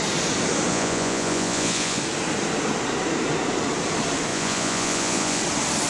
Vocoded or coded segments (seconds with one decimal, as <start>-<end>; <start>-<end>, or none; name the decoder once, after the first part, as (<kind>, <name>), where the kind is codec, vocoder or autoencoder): 0.7-2.0 (vocoder, Vocos); 4.3-5.4